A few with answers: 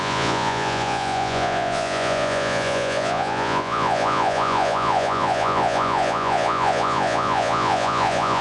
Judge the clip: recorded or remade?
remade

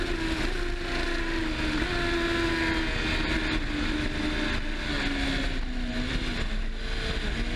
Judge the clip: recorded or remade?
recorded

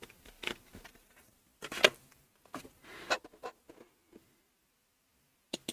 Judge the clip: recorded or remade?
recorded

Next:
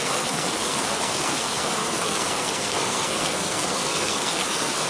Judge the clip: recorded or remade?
remade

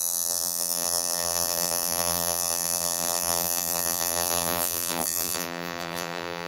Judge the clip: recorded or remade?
remade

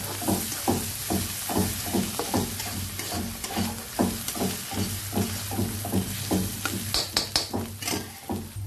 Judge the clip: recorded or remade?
recorded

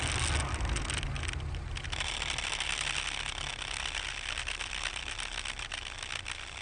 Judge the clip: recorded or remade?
recorded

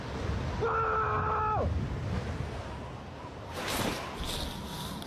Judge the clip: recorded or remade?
recorded